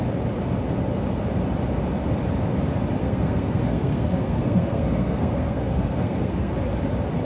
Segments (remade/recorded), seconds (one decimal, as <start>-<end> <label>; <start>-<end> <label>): 0.0-3.0 recorded; 3.0-6.5 remade; 6.5-7.2 recorded